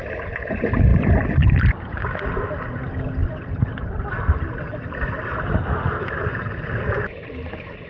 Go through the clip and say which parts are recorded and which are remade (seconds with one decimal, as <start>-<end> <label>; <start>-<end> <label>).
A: 0.0-0.9 recorded; 0.9-1.6 remade; 1.6-3.2 recorded; 3.2-7.5 remade; 7.5-7.9 recorded